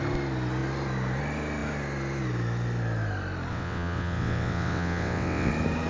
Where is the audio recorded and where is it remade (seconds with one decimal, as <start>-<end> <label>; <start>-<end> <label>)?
0.0-3.5 recorded; 3.5-5.5 remade; 5.5-5.9 recorded